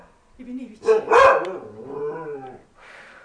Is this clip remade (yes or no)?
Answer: no